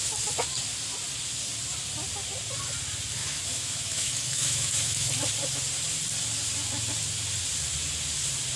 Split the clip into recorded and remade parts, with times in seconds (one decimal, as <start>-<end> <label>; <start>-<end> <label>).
0.0-3.2 recorded; 3.2-5.1 remade; 5.1-8.6 recorded